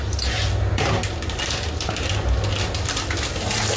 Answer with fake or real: real